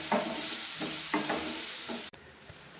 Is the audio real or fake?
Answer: fake